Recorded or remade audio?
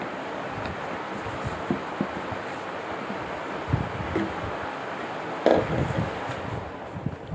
recorded